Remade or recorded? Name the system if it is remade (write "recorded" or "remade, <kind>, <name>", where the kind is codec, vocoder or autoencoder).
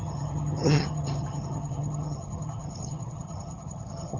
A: remade, vocoder, HiFi-GAN